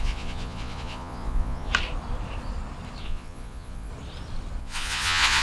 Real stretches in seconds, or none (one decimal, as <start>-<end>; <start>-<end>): 1.7-3.0; 3.9-4.6